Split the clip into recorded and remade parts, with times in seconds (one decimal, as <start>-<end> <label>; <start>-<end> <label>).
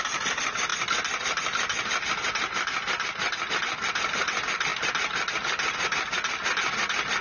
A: 0.0-7.2 recorded